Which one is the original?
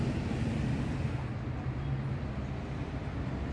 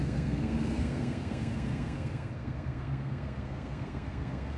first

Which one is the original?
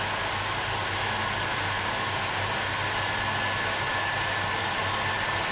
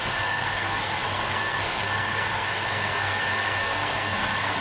first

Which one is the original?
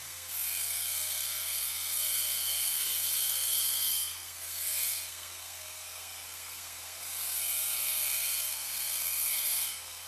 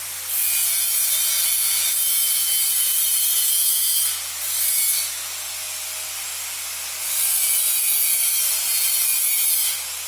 second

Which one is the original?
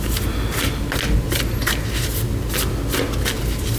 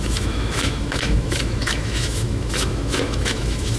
first